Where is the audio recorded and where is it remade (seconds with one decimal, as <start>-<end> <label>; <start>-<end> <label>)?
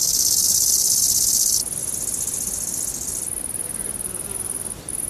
0.0-5.1 recorded